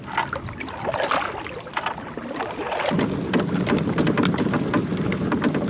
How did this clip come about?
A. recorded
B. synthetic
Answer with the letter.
A